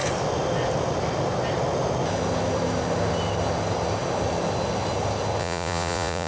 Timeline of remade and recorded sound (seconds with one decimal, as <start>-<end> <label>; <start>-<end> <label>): 0.0-5.4 recorded; 5.4-6.3 remade